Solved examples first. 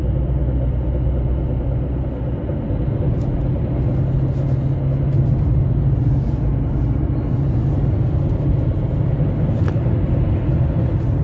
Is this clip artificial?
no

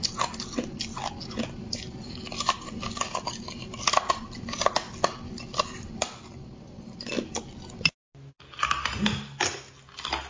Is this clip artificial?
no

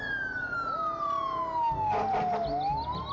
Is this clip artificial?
no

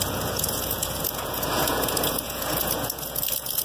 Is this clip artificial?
yes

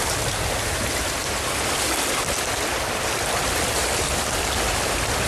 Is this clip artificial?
no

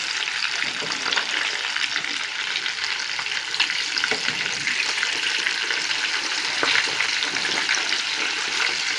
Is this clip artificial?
yes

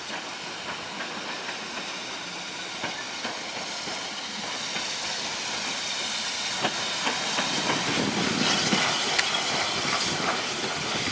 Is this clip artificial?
no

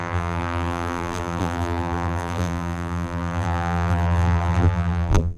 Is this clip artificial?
yes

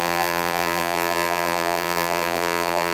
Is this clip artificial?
yes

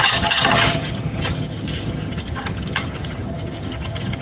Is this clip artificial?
yes